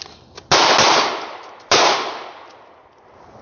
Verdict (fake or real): real